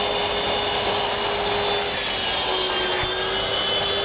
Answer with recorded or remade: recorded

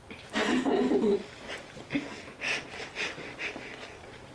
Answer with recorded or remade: recorded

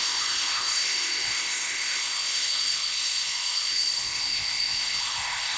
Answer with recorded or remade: remade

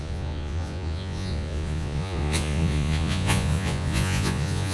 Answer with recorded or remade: remade